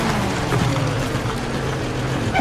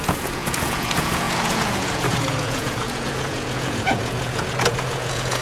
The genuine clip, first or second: first